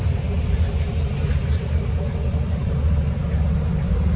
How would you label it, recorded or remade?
recorded